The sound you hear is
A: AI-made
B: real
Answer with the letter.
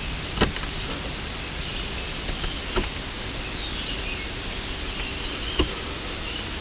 B